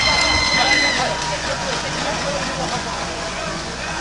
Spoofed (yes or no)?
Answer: yes